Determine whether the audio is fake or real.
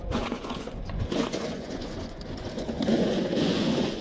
fake